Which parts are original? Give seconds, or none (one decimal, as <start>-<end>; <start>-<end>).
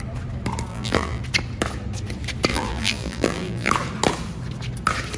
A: 0.0-0.7; 1.2-2.5; 3.7-5.2